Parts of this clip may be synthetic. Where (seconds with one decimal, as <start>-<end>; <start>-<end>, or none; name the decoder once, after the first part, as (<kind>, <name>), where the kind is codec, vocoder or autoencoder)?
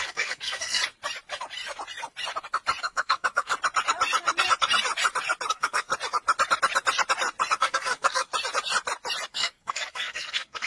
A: 0.0-0.8 (codec, SNAC); 2.8-3.5; 5.5-5.9; 7.6-8.3; 9.3-10.7